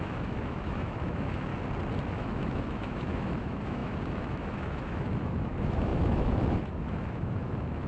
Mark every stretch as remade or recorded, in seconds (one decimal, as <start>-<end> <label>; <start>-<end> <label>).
0.0-1.5 remade; 1.5-2.1 recorded; 2.1-7.9 remade